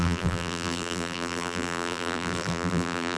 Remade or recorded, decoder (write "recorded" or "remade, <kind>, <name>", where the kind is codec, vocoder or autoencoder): remade, vocoder, BigVGAN v2